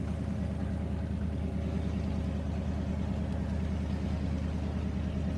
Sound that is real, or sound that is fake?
real